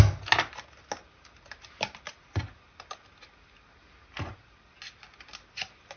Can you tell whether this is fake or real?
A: real